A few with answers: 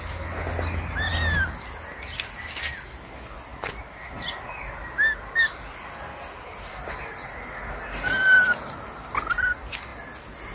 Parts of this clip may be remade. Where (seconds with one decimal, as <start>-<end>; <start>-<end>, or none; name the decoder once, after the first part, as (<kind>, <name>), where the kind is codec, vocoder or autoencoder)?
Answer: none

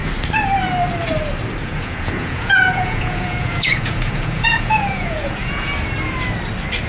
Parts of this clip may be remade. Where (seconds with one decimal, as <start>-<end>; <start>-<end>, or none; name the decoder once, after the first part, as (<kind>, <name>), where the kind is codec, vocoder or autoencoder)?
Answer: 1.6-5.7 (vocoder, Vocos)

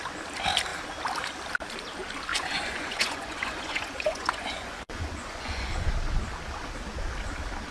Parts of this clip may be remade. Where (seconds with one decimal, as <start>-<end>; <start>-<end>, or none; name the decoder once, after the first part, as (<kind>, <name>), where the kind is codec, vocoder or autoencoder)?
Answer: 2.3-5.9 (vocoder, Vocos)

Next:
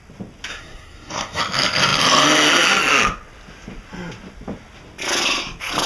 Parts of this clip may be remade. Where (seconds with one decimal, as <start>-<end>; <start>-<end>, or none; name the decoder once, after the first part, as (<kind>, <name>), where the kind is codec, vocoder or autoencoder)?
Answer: 0.5-1.4 (codec, SNAC)

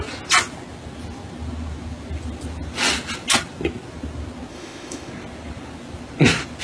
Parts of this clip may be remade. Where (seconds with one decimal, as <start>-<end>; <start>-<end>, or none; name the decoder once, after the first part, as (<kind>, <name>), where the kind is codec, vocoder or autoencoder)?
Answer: 4.5-5.1 (autoencoder, DAC-VAE)